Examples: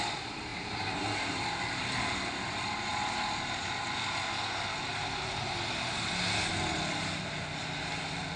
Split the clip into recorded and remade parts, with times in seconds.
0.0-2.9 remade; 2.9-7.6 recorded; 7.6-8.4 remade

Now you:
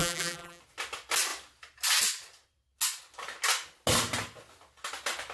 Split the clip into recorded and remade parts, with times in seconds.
0.0-0.6 remade; 0.6-5.3 recorded

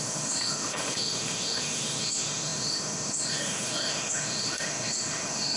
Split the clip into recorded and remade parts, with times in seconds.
0.0-5.6 remade

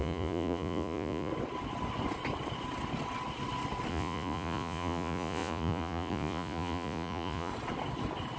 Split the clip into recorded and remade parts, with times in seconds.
0.0-1.3 remade; 1.3-3.9 recorded; 3.9-7.5 remade; 7.5-8.4 recorded

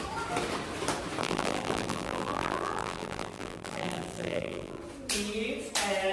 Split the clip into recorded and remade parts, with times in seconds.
0.0-1.2 recorded; 1.2-4.8 remade; 4.8-6.1 recorded